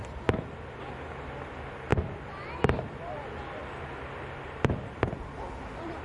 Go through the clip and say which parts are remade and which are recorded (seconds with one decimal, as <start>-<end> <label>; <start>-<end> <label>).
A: 0.0-6.0 recorded